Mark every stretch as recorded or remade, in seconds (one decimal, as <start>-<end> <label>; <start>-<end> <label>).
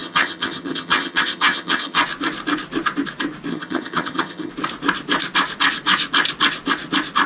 0.0-2.0 remade; 2.0-3.5 recorded; 3.5-4.5 remade; 4.5-7.3 recorded